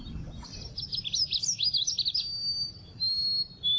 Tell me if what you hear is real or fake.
real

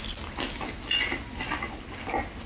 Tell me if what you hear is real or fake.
real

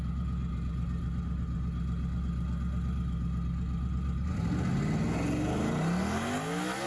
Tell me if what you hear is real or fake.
real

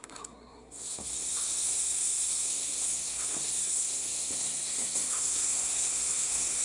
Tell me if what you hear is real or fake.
fake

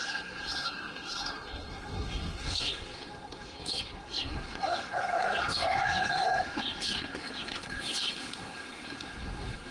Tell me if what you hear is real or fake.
fake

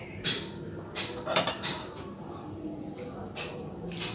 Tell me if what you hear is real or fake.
real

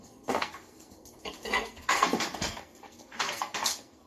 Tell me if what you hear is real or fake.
fake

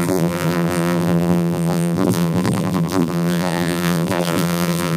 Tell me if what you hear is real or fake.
fake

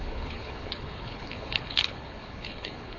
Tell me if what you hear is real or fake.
fake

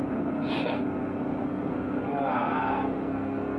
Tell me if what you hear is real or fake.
fake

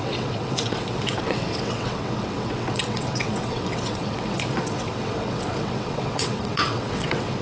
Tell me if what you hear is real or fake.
fake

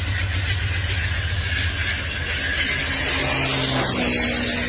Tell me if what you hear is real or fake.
real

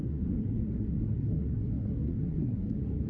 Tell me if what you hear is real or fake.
fake